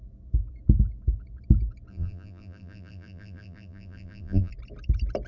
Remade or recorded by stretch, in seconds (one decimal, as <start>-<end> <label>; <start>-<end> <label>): 0.0-1.9 recorded; 1.9-4.5 remade; 4.5-5.3 recorded